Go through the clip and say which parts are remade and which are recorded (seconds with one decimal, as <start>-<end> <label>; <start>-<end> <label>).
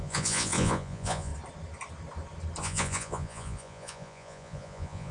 0.0-1.3 remade; 1.3-2.6 recorded; 2.6-5.1 remade